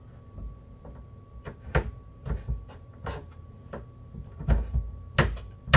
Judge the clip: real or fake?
real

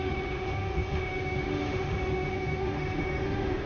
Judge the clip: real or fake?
fake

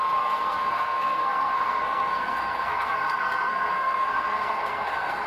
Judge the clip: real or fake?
fake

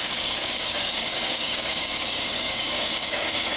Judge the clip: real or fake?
fake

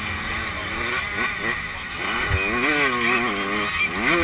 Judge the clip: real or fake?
real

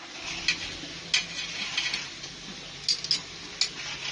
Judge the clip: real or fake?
real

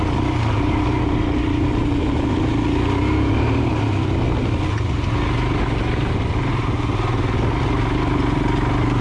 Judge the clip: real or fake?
real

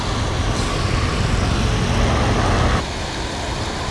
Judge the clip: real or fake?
real